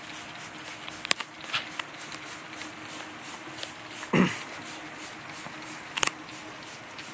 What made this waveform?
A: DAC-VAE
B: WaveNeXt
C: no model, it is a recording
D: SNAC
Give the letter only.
C